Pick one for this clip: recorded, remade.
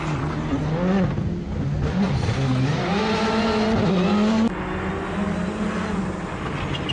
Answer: recorded